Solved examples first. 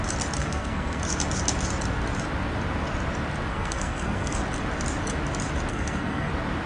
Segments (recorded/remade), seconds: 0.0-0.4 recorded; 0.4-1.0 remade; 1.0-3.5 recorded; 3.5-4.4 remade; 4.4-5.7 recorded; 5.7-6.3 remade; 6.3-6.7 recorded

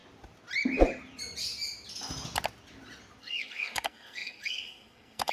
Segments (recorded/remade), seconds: 0.0-3.2 recorded; 3.2-5.3 remade

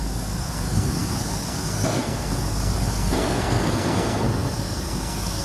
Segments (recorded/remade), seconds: 0.0-5.4 remade